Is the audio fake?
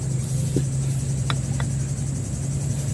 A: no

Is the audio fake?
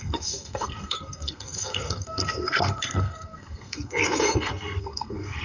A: yes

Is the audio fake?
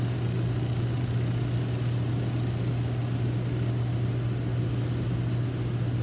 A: no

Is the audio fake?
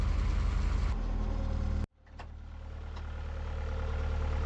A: no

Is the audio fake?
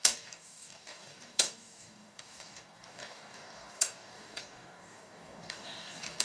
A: yes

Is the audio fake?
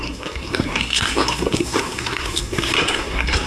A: yes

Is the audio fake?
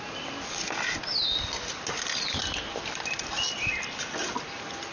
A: no